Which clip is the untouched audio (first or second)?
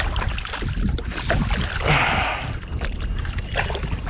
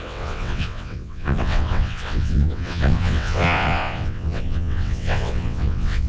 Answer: first